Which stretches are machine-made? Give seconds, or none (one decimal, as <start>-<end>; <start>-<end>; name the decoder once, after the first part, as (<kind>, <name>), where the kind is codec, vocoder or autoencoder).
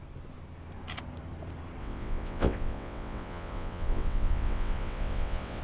1.8-5.6 (vocoder, WaveNeXt)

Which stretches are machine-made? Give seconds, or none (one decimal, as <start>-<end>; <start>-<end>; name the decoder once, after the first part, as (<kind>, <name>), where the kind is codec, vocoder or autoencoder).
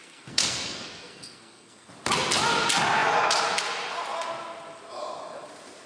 0.0-1.9 (codec, SNAC)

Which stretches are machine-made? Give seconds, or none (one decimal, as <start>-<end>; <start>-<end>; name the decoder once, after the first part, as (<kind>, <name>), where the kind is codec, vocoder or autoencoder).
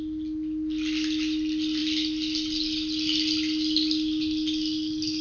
none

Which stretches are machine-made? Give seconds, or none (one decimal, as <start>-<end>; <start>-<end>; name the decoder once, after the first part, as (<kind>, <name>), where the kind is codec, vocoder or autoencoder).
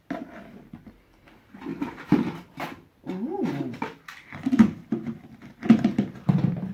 1.7-2.6 (vocoder, BigVGAN v2)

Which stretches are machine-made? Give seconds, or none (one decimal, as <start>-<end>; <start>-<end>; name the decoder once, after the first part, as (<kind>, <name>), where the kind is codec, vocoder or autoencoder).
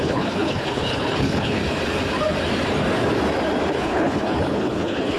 0.0-1.6 (codec, HILCodec); 3.7-5.2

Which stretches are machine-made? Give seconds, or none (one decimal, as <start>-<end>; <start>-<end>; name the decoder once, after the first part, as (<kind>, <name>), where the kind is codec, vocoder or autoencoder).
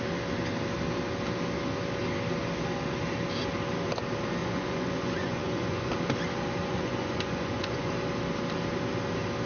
4.4-5.9 (vocoder, Vocos); 6.6-7.9